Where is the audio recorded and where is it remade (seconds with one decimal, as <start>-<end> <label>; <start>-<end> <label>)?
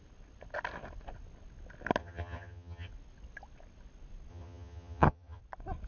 0.0-2.0 recorded; 2.0-2.9 remade; 2.9-4.3 recorded; 4.3-5.4 remade; 5.4-5.9 recorded